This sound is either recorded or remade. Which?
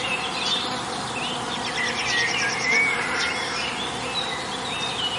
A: recorded